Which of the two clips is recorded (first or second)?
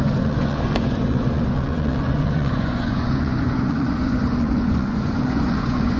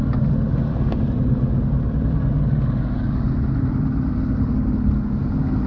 second